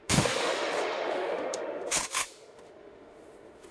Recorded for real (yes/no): no